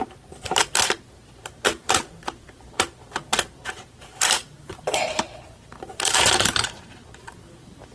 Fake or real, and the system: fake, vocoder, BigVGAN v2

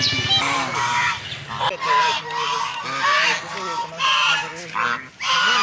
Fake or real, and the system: real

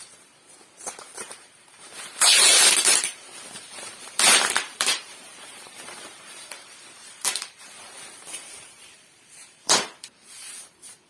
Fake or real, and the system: fake, vocoder, BigVGAN v2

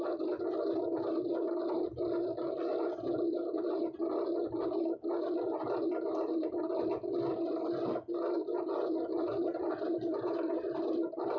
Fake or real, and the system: real